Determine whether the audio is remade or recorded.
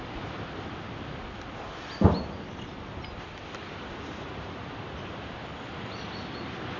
recorded